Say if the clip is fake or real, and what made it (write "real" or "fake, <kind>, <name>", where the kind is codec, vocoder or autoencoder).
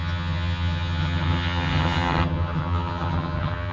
fake, vocoder, HiFi-GAN